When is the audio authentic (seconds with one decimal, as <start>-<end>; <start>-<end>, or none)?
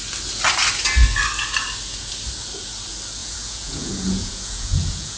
0.0-3.2